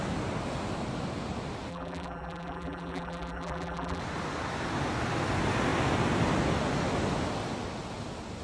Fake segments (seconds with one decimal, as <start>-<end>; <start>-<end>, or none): 1.7-4.0

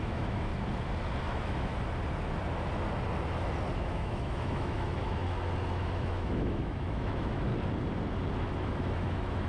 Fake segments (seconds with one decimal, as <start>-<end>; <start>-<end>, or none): 0.0-0.5; 1.2-1.7; 3.8-5.2; 5.7-7.5; 8.6-9.5

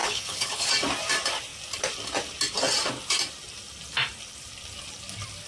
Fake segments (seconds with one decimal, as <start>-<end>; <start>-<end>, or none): 0.0-0.7